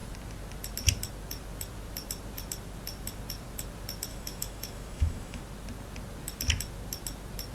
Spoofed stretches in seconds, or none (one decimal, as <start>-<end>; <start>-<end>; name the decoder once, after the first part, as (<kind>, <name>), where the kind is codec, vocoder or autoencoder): 4.1-5.4 (autoencoder, DAC-VAE)